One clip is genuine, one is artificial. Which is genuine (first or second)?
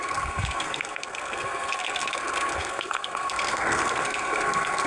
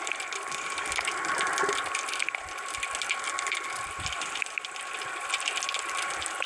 second